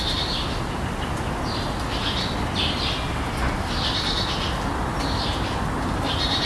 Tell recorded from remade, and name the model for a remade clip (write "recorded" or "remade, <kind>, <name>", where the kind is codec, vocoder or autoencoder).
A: recorded